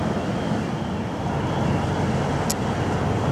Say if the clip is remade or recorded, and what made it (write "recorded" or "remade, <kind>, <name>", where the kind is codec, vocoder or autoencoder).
recorded